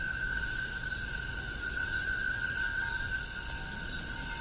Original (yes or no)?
yes